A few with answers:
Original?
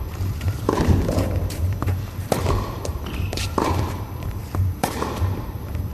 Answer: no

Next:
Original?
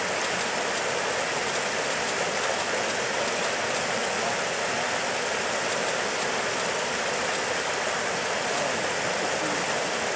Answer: yes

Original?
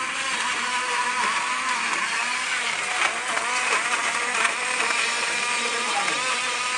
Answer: no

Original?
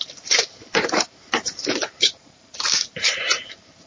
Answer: no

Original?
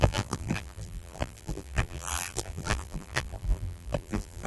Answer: no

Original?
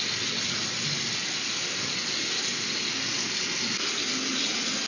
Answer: yes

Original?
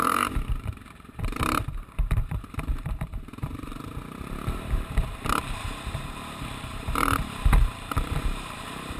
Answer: no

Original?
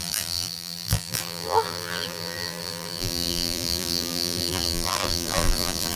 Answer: no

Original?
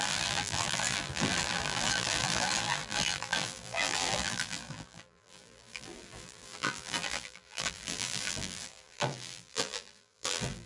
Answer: no